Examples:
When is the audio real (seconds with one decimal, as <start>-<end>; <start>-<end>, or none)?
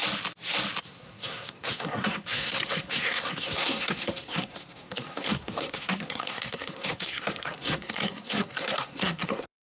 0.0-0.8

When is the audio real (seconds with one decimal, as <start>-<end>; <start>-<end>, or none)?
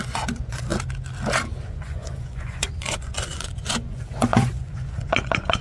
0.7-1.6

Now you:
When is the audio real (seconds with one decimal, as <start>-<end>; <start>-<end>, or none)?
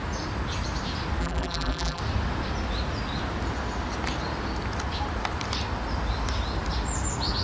0.0-1.2; 2.0-7.4